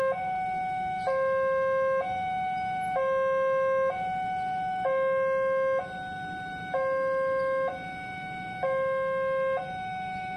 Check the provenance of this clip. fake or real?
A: real